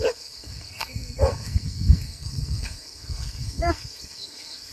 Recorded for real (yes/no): no